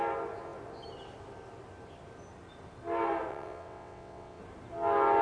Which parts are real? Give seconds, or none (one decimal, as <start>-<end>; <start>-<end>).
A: 0.0-3.3; 4.4-5.2